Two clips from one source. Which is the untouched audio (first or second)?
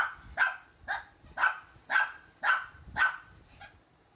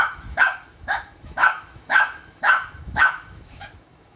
first